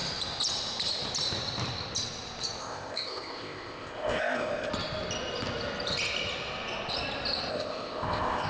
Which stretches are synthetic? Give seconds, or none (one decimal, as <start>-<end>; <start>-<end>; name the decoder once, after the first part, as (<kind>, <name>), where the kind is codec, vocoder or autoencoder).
2.6-4.7 (codec, ZipCodec); 7.5-8.5